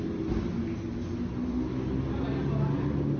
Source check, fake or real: real